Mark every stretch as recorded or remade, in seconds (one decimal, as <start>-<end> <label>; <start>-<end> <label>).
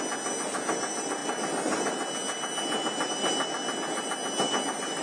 0.0-5.0 recorded